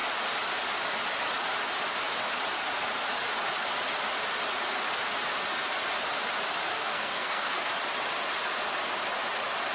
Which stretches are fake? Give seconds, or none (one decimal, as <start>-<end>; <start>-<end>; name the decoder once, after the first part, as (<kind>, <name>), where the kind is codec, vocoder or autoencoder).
6.7-7.7 (codec, SNAC)